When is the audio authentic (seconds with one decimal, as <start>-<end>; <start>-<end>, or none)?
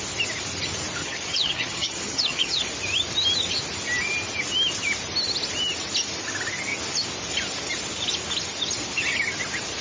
0.0-1.0; 2.6-9.8